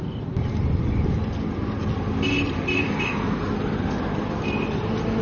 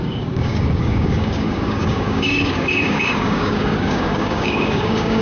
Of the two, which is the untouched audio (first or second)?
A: first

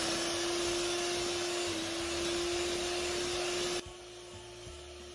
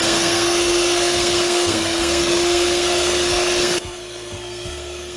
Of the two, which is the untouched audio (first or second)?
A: first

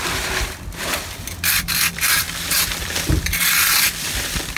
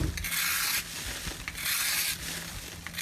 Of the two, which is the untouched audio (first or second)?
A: second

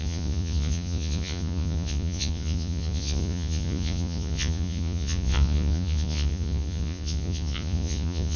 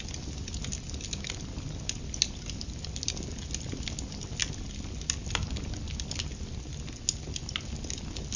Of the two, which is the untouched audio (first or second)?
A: second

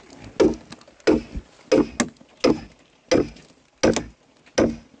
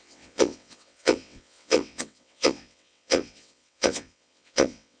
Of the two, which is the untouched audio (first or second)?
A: first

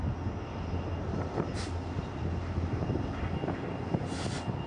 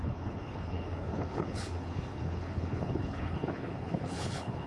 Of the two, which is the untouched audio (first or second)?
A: first